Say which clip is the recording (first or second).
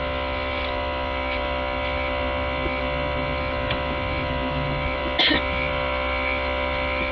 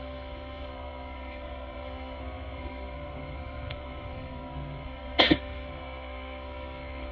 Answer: first